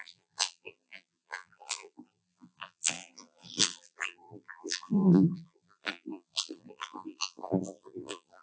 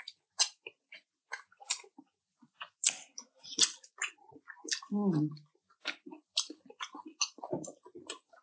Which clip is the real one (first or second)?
second